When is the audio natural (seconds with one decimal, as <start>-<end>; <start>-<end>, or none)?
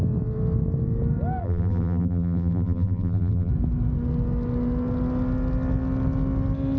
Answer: 0.0-1.4; 3.5-6.8